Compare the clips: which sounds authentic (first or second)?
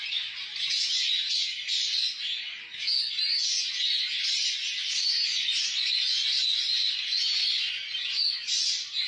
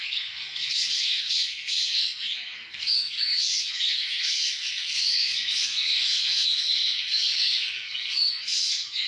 first